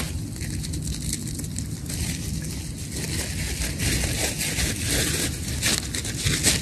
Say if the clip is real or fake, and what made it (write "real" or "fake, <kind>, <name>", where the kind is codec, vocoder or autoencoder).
real